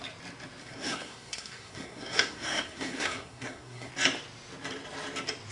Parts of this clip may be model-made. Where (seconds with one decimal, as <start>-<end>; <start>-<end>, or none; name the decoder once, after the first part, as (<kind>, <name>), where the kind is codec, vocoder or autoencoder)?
0.6-3.9 (codec, SNAC)